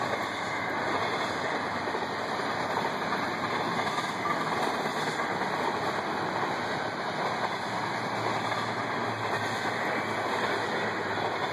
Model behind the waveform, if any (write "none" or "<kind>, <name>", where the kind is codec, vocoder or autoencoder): none